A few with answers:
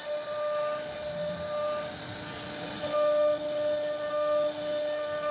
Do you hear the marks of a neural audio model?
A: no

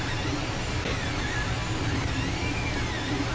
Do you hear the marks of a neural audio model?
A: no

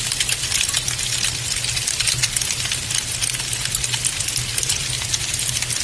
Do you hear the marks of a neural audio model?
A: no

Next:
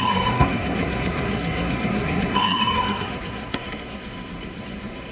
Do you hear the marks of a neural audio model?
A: yes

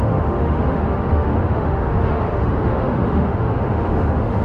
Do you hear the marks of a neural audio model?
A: yes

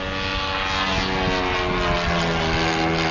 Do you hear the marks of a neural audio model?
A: no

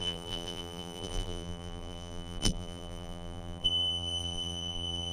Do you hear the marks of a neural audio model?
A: yes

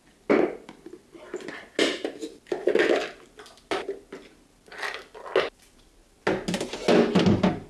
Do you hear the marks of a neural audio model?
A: no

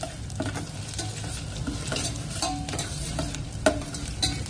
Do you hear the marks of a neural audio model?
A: no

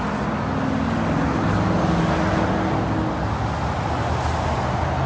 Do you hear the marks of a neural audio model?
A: no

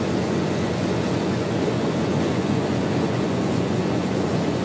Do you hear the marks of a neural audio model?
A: yes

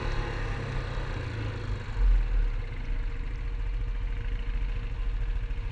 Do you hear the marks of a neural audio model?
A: no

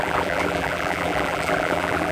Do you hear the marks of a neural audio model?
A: yes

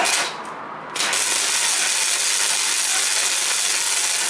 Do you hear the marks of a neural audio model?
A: no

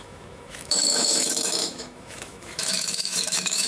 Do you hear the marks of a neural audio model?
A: yes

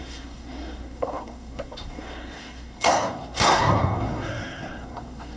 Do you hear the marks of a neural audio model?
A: yes